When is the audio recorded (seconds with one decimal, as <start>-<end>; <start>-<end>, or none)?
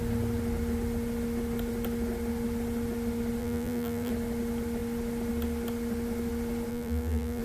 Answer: 0.0-3.4; 4.1-6.7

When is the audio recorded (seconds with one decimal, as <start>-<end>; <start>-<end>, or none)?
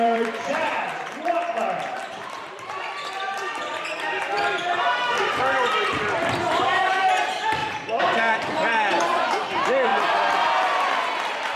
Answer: 7.6-8.5; 9.9-11.2